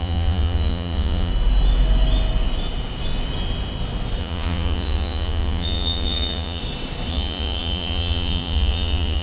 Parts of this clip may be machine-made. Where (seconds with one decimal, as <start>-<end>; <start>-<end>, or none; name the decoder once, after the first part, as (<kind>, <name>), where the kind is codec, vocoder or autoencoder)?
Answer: 0.0-1.3 (vocoder, Vocos); 4.2-6.6; 7.1-9.2